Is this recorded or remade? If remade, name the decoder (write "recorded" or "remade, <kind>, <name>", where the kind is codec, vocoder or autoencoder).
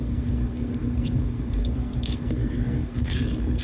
remade, codec, SNAC